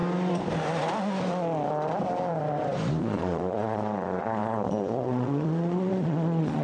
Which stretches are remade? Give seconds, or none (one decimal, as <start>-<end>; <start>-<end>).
3.0-6.6